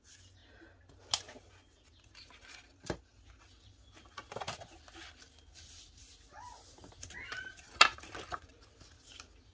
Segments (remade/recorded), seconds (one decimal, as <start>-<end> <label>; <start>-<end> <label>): 0.0-9.5 recorded